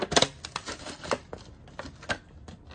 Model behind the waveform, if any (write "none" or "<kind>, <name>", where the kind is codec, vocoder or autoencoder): none